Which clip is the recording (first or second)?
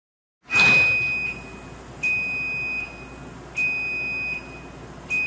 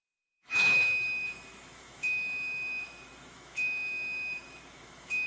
first